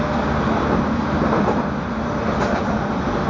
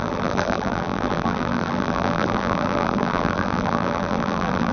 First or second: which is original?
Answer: first